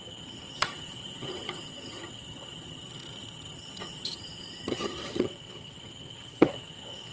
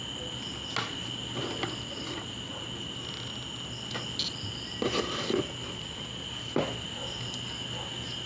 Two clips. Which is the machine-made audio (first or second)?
first